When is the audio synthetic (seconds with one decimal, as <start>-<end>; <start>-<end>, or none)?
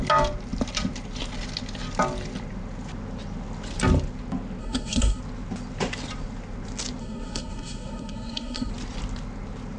4.6-5.2; 7.0-8.7